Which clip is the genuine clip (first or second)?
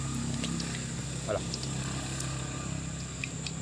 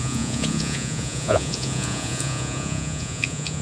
first